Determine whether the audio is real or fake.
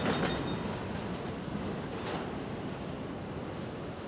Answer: real